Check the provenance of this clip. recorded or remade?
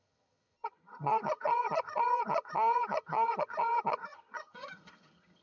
remade